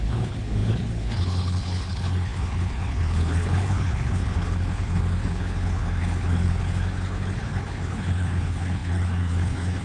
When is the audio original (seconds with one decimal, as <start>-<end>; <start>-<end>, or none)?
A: none